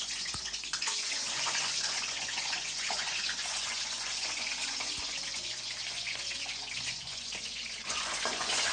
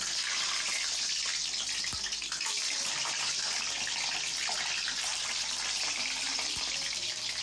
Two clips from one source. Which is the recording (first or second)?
second